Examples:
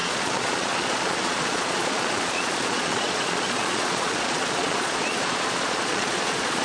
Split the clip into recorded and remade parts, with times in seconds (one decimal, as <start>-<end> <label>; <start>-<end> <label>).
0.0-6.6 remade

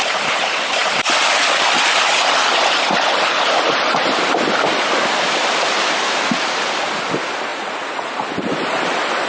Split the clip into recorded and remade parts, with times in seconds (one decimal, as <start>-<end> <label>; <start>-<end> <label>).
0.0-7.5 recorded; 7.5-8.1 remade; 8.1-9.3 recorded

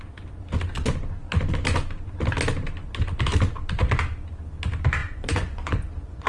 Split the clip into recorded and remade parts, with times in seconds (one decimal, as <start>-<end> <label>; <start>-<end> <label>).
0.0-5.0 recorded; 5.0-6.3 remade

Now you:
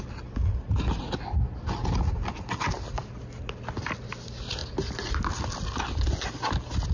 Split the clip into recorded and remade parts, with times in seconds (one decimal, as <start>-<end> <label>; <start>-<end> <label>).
0.0-6.9 recorded